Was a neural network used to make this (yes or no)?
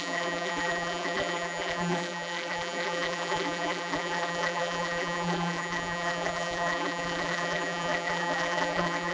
yes